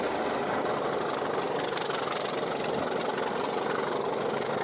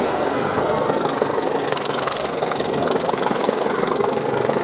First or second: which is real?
first